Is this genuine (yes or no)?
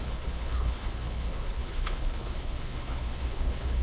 no